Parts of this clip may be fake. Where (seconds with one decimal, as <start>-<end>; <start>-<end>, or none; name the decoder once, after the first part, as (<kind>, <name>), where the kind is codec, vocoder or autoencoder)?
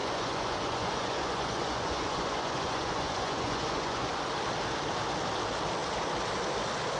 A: 0.0-4.2 (vocoder, Vocos)